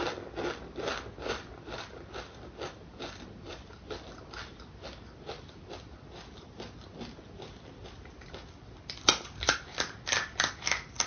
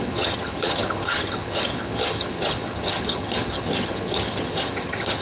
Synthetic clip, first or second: second